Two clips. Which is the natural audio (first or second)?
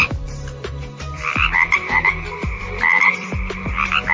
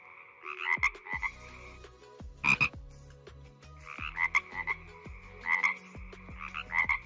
second